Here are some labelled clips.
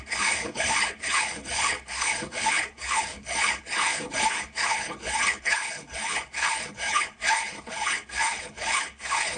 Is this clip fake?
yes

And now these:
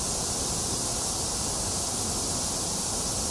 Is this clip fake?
no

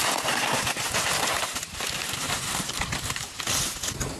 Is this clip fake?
no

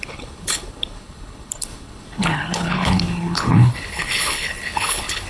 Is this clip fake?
yes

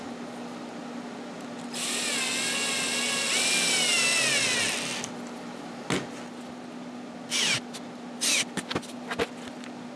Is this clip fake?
no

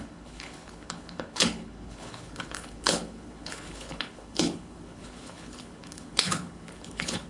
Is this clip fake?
yes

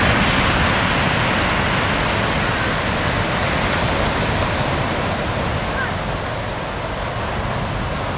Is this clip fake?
no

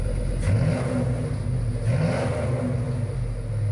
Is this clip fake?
no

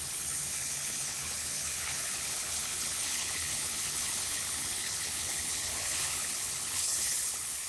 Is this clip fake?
yes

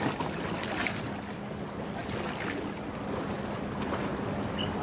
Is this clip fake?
no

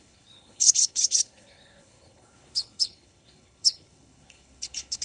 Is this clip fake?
yes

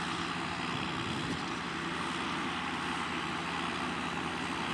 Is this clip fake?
no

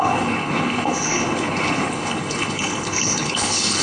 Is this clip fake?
yes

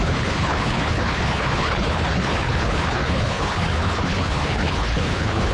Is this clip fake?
yes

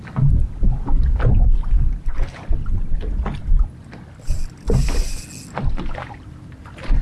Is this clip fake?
no